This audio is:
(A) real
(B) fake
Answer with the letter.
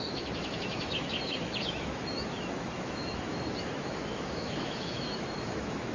B